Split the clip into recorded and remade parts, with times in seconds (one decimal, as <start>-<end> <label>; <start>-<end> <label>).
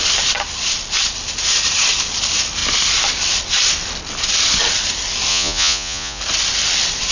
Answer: 0.0-5.3 recorded; 5.3-6.2 remade; 6.2-7.1 recorded